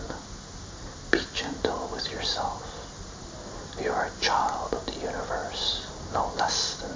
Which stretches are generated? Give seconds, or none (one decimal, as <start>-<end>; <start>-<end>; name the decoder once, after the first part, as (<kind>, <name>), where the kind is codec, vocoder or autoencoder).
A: none